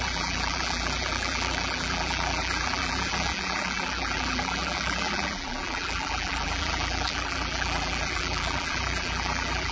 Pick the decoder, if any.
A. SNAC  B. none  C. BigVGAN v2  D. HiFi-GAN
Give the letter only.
C